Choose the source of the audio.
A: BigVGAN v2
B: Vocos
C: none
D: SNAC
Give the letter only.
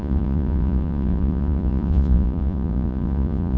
B